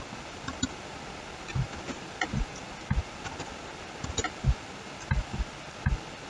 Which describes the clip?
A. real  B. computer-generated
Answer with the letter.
A